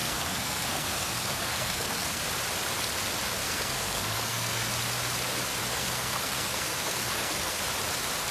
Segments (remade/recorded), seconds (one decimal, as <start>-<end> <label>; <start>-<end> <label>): 0.0-2.2 remade; 2.2-3.4 recorded; 3.4-4.7 remade; 4.7-5.6 recorded; 5.6-7.6 remade; 7.6-8.3 recorded